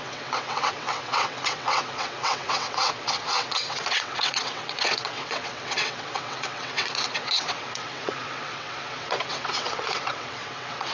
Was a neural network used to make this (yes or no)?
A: yes